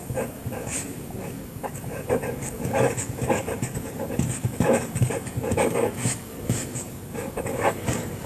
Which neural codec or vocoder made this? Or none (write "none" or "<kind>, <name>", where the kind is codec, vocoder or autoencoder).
codec, DAC